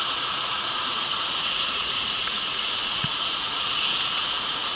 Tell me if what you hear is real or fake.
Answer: fake